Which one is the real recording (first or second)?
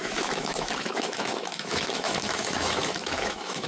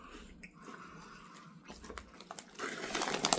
second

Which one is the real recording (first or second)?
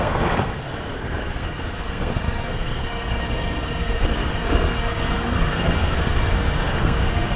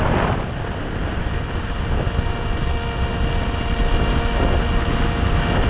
second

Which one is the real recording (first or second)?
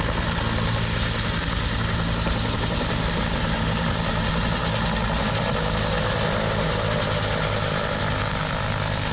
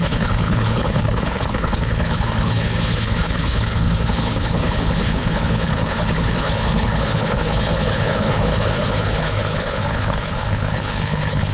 first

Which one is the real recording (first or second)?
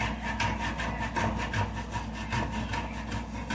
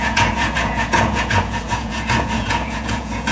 first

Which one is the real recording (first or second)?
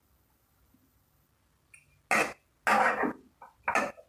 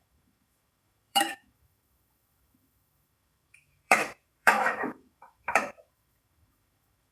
first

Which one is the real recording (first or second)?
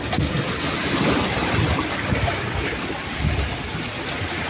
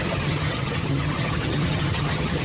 first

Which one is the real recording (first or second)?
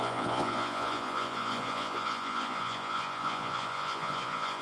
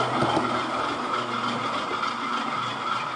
second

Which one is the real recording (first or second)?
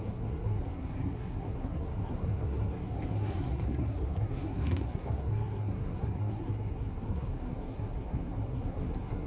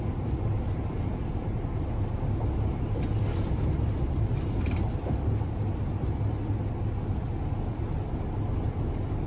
second